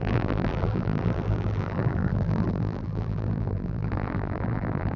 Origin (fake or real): fake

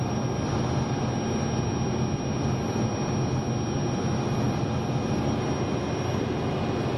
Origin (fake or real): real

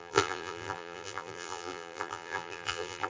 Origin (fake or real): fake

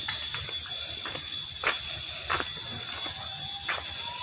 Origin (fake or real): real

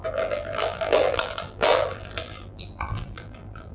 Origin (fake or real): fake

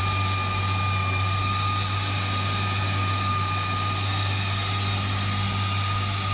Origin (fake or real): real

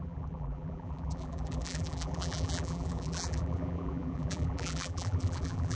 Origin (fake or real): fake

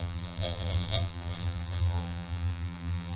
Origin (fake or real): fake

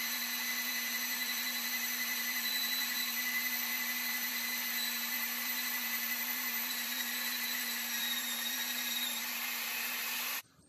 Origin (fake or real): fake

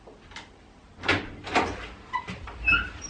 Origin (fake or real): real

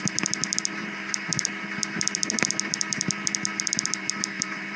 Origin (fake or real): fake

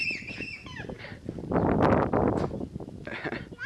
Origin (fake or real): real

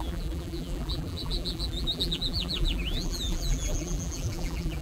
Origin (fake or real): fake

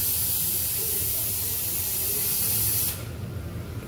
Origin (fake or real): real